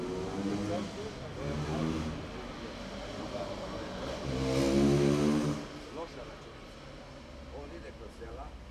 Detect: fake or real real